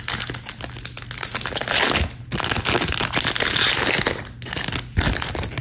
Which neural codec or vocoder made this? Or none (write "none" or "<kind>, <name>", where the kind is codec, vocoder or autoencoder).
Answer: none